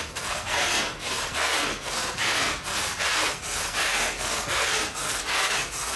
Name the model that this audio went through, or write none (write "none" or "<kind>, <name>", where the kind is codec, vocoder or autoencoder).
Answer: codec, SNAC